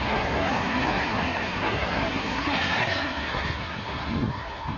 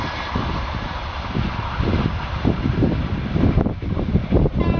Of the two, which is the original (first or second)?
second